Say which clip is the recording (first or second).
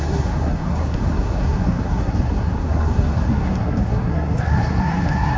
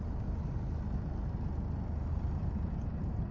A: second